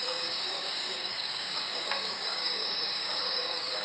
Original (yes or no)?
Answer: no